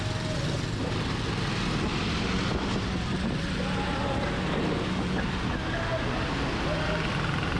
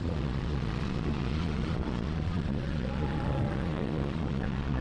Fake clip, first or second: second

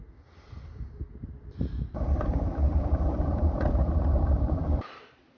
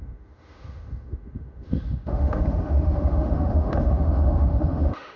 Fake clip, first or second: second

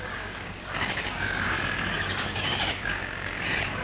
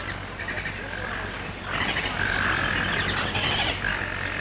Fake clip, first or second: first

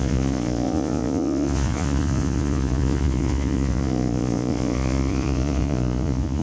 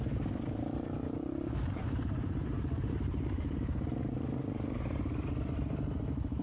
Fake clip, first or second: first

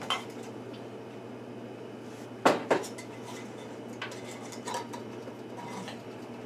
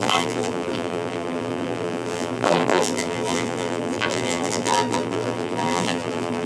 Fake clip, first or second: second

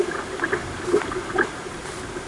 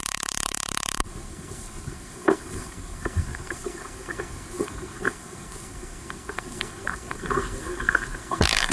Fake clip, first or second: second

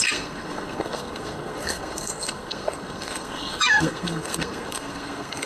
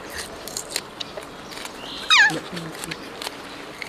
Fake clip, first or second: first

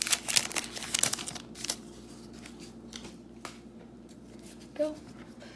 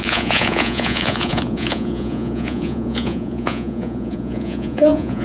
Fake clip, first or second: second